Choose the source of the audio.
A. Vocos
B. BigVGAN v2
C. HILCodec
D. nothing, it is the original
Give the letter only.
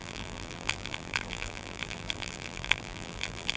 B